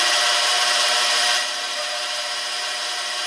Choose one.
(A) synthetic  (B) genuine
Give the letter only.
A